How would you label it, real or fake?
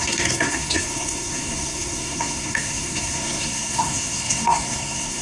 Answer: fake